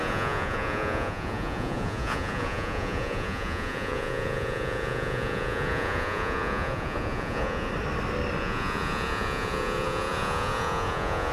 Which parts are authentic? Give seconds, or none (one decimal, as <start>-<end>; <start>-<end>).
7.7-8.4